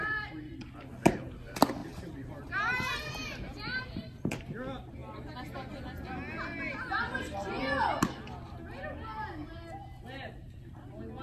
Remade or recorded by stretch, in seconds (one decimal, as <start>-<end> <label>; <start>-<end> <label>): 0.0-1.8 recorded; 1.8-4.5 remade; 4.5-11.2 recorded

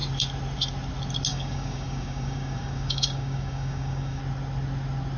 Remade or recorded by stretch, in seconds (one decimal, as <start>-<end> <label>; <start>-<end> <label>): 0.0-1.3 recorded; 1.3-4.2 remade; 4.2-5.2 recorded

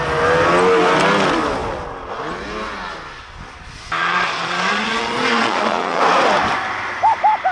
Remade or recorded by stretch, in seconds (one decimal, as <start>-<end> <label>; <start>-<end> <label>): 0.0-4.0 recorded; 4.0-6.0 remade; 6.0-7.5 recorded

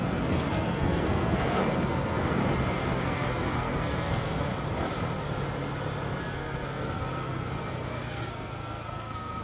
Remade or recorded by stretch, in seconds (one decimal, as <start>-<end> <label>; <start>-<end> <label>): 0.0-2.4 remade; 2.4-2.9 recorded; 2.9-4.5 remade; 4.5-6.2 recorded; 6.2-9.4 remade

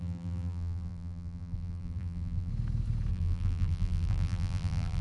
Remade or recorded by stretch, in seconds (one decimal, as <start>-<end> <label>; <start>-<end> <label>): 0.0-2.5 remade; 2.5-3.1 recorded; 3.1-5.0 remade